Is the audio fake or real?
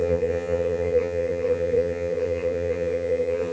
fake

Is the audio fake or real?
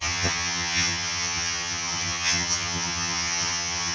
fake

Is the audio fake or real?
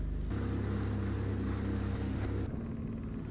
real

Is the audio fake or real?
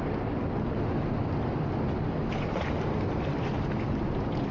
real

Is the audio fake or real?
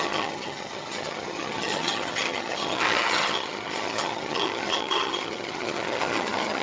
fake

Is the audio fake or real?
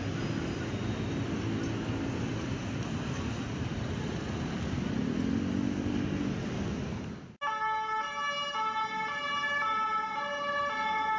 real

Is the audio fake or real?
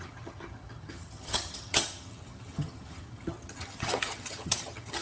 fake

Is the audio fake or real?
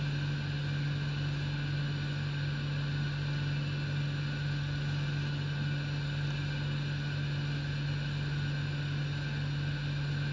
real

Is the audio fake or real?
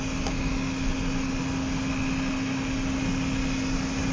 real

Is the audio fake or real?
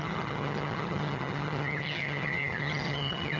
fake